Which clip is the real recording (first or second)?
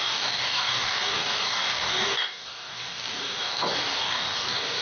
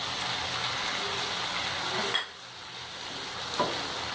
second